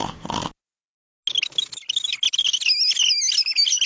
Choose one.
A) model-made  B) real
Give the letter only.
B